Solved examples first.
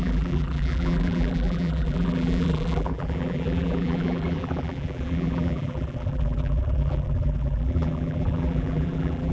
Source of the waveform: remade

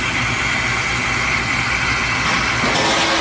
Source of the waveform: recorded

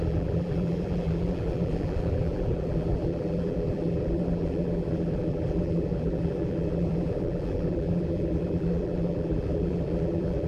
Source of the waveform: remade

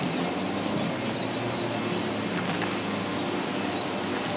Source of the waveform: recorded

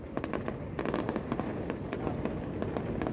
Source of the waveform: recorded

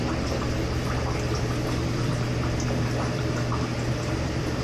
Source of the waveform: recorded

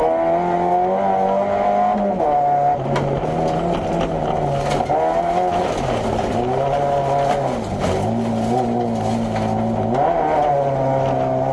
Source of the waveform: recorded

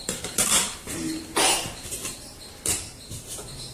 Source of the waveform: remade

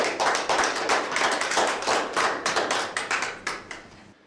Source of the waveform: remade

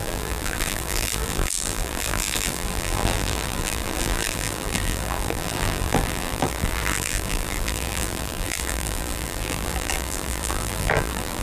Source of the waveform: remade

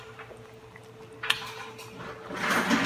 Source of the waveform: recorded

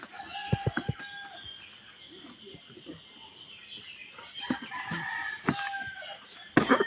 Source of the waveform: recorded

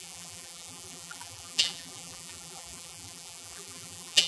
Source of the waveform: remade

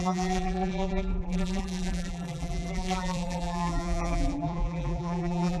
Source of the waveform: remade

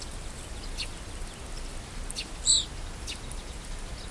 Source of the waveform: recorded